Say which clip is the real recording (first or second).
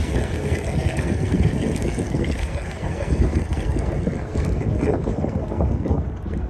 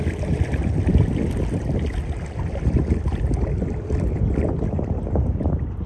second